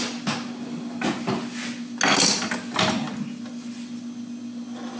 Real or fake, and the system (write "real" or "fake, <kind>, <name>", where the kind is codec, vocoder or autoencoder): real